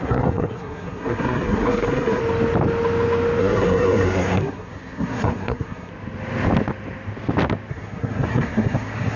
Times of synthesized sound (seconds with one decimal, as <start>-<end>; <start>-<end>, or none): 0.0-2.2; 3.4-5.9; 7.7-9.2